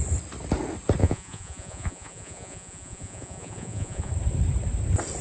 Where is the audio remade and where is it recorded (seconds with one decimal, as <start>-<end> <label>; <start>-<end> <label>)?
0.0-1.0 recorded; 1.0-4.1 remade; 4.1-5.2 recorded